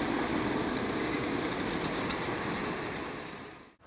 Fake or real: fake